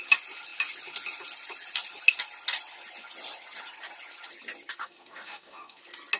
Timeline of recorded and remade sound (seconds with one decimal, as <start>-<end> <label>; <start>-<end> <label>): 0.0-4.8 recorded; 4.8-5.8 remade; 5.8-6.2 recorded